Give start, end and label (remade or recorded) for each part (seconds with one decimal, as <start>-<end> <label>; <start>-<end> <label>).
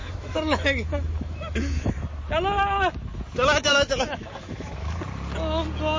0.0-1.9 remade; 1.9-3.7 recorded; 3.7-5.0 remade; 5.0-6.0 recorded